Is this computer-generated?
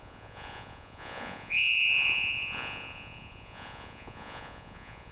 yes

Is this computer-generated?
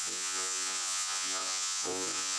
yes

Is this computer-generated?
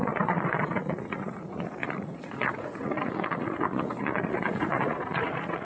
yes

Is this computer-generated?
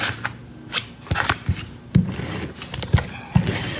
no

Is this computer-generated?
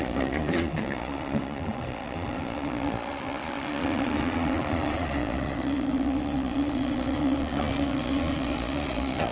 yes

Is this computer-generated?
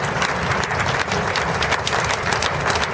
no